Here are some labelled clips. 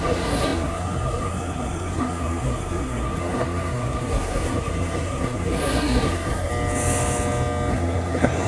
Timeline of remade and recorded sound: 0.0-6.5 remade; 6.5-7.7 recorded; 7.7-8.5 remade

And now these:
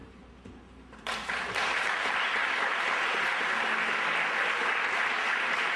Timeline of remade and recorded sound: 0.0-3.5 remade; 3.5-5.8 recorded

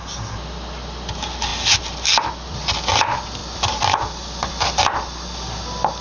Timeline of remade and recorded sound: 0.0-6.0 recorded

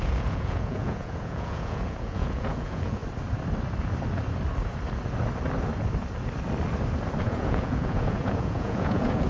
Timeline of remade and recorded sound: 0.0-3.0 remade; 3.0-7.2 recorded; 7.2-9.3 remade